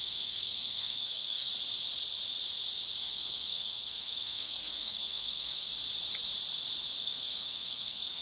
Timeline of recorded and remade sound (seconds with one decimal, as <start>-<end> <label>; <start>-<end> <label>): 0.0-1.5 remade; 1.5-3.0 recorded; 3.0-5.7 remade; 5.7-7.0 recorded; 7.0-8.2 remade